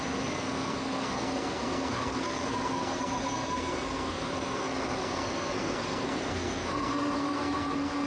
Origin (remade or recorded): remade